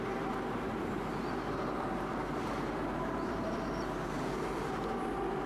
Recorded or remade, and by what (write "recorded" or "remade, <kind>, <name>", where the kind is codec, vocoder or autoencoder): remade, vocoder, BigVGAN v2